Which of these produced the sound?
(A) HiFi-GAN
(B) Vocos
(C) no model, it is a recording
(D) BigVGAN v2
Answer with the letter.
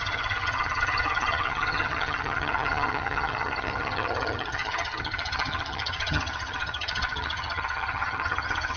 A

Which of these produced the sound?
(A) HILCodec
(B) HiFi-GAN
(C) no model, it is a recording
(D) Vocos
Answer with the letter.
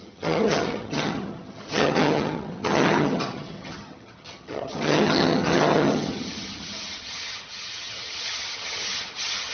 B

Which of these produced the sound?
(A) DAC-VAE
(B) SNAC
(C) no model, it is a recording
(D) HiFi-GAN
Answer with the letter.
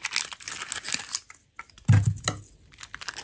C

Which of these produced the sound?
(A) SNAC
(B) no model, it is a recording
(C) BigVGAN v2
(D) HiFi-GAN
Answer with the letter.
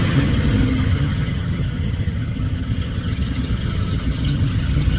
D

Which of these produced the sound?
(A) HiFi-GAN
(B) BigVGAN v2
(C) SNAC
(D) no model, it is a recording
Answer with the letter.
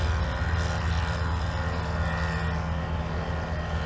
D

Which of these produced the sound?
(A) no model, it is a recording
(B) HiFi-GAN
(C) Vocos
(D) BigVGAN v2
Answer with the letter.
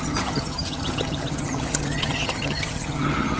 B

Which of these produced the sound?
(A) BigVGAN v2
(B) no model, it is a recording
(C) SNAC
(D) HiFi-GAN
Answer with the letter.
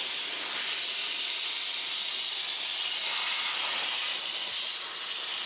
B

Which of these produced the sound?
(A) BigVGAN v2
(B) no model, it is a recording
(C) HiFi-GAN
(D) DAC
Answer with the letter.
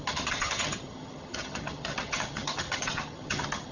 C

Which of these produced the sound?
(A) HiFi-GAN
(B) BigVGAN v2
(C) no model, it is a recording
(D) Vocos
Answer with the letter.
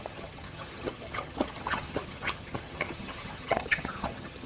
A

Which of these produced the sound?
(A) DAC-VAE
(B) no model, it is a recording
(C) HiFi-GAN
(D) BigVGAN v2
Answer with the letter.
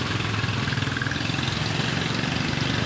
B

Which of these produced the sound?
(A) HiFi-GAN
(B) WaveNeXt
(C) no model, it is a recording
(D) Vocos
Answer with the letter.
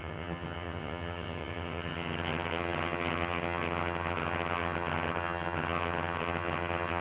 A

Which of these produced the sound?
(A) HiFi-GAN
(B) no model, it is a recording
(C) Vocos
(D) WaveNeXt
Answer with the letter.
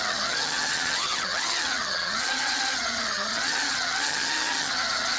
A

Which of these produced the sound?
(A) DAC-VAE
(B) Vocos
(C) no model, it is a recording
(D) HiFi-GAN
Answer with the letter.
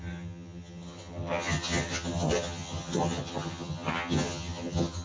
D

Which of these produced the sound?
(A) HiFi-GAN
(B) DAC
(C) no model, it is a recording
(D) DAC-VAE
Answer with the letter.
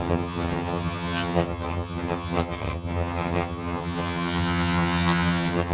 A